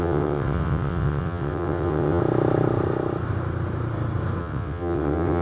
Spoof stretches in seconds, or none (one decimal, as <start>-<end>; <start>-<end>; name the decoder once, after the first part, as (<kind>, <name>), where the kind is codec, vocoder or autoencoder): 0.0-2.2 (vocoder, WaveNeXt); 4.4-5.4